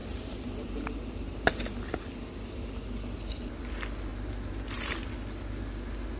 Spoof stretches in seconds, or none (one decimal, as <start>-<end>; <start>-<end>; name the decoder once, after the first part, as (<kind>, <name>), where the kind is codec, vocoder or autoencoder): 0.0-1.6 (vocoder, BigVGAN v2); 4.1-5.1